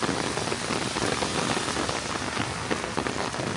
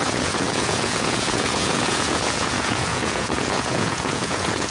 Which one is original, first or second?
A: first